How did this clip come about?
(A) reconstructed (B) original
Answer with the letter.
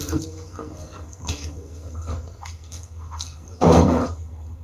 A